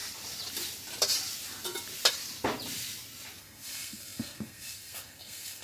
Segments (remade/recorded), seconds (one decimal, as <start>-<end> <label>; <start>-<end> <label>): 0.0-3.4 recorded; 3.4-5.6 remade